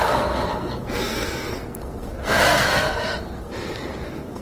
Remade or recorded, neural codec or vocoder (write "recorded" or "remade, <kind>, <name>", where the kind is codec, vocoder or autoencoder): remade, codec, SNAC